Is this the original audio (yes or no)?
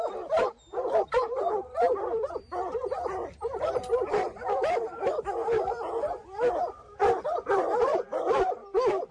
no